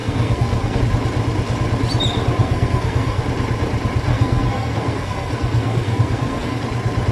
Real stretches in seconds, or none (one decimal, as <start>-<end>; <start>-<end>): 0.8-2.4; 3.2-4.1; 6.6-7.1

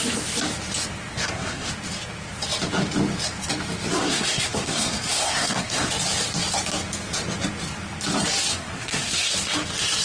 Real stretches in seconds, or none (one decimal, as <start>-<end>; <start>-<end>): 0.0-1.1; 1.7-4.0; 5.9-8.5; 9.3-10.0

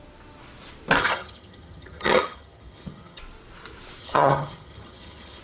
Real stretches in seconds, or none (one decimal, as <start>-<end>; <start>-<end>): 0.0-1.0; 3.2-4.0